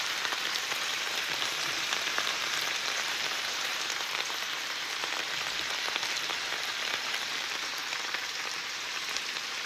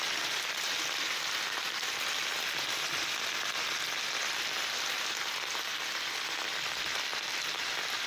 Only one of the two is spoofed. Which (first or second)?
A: first